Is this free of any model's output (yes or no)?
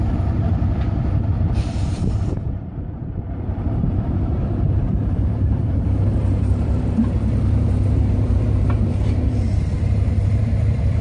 no